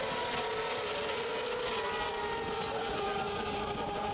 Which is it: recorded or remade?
recorded